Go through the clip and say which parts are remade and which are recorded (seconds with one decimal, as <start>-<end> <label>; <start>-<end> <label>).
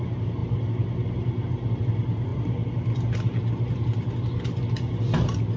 0.0-5.6 recorded